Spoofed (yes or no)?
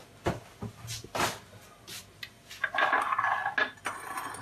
no